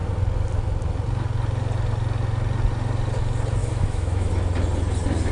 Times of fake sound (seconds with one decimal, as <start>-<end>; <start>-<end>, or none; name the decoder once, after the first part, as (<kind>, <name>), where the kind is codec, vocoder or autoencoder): 3.6-4.3 (autoencoder, DAC-VAE)